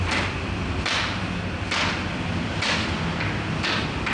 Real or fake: real